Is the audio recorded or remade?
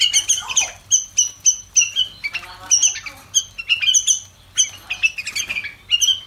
recorded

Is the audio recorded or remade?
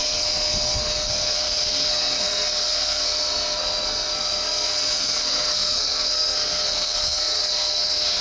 remade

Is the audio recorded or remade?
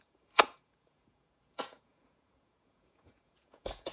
remade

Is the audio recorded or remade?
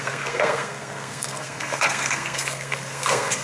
remade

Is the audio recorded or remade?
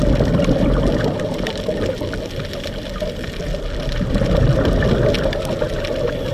recorded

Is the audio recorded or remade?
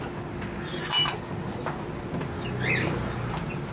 recorded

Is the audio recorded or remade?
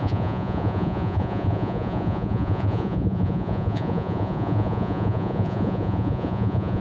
remade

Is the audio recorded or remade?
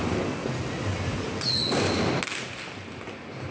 recorded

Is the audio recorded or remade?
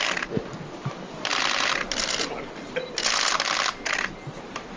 recorded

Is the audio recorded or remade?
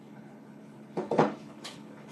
remade